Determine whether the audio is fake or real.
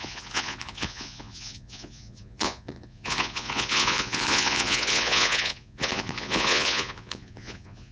fake